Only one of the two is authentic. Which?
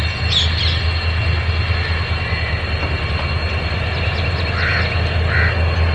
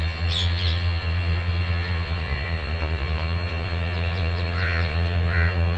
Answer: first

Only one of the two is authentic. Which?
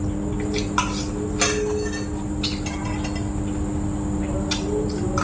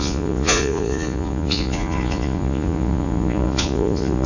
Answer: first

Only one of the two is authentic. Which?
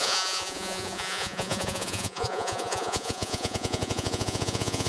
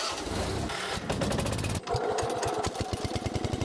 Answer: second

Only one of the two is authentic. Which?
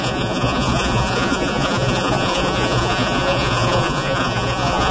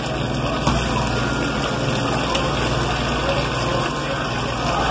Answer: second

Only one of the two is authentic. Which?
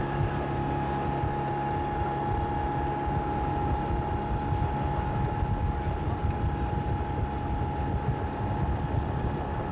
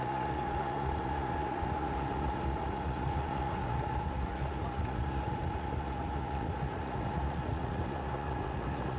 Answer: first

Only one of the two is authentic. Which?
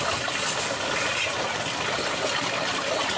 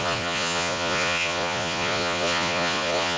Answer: first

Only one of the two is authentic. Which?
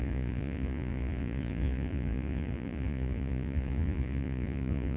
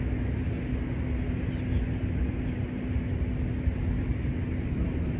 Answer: second